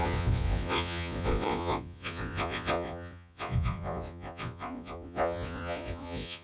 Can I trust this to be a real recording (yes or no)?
no